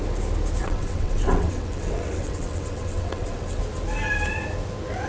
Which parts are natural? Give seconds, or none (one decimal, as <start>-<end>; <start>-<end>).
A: 0.0-0.6; 3.6-5.1